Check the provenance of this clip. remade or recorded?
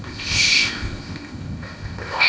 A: remade